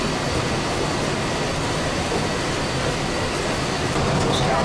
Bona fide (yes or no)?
yes